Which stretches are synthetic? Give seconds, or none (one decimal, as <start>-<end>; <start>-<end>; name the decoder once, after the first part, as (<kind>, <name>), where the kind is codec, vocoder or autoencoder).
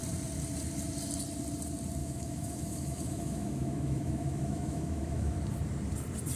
2.0-5.4 (autoencoder, DAC-VAE)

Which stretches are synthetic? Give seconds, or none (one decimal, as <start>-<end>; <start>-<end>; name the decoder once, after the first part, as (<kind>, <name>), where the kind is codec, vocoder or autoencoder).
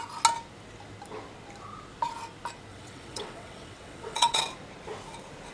2.7-4.4 (vocoder, WaveNeXt)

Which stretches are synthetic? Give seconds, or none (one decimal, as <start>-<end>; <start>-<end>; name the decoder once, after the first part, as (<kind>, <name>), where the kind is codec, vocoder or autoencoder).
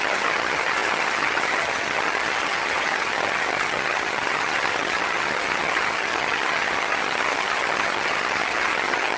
0.0-9.2 (vocoder, HiFi-GAN)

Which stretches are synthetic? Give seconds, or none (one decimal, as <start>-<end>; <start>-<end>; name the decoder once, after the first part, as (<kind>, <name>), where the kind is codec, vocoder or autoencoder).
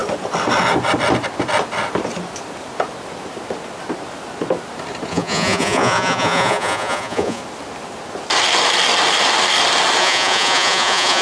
5.1-7.4 (vocoder, Vocos); 10.0-11.2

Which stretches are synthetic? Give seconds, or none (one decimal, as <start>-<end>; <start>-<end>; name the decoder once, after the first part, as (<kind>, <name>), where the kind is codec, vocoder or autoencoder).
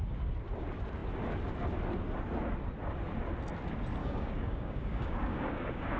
4.0-6.0 (codec, DAC)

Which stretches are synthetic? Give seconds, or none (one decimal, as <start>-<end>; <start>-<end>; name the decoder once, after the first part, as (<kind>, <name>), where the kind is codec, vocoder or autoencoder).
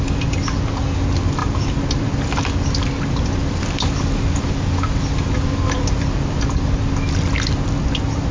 none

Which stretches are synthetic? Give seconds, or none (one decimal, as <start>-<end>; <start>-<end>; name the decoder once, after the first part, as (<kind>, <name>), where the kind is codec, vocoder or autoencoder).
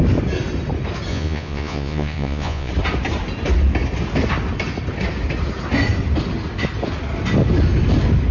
1.1-2.7 (vocoder, Vocos)